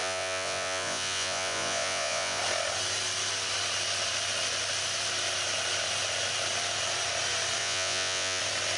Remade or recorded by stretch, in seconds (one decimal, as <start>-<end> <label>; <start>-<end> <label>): 0.0-2.4 remade; 2.4-7.6 recorded; 7.6-8.4 remade; 8.4-8.8 recorded